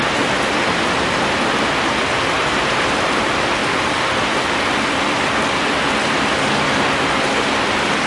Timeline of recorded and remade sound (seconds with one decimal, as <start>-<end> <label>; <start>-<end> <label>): 0.0-8.1 recorded